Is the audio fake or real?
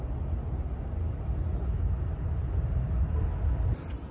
real